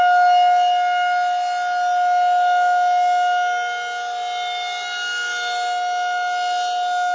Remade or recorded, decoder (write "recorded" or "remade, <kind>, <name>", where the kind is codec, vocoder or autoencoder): recorded